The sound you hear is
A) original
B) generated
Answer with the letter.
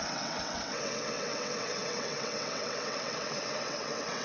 B